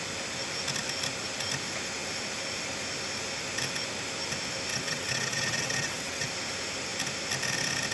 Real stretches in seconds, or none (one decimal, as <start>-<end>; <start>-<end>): 0.0-4.7; 6.3-7.9